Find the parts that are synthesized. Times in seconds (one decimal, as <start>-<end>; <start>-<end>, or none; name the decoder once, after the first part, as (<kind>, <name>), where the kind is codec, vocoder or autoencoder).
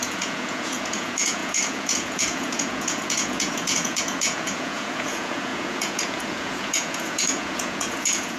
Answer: 0.0-8.4 (vocoder, Vocos)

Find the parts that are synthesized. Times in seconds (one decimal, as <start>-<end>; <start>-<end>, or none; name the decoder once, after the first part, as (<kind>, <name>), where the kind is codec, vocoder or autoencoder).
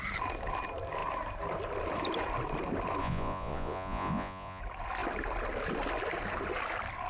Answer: 3.0-4.6 (vocoder, Vocos)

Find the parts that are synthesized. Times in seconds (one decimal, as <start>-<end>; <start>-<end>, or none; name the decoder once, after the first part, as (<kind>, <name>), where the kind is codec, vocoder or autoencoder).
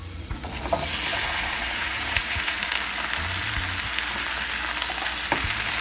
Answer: 0.0-0.6 (vocoder, Vocos); 1.1-2.6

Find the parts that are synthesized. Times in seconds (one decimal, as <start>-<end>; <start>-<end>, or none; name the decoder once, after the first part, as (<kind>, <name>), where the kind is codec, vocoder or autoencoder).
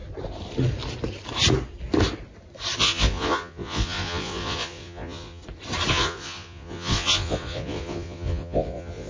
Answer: 2.8-5.4 (vocoder, Vocos); 5.9-9.1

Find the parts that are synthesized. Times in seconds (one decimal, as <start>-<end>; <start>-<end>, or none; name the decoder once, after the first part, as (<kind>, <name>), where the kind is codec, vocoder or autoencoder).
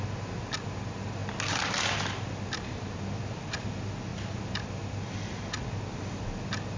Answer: none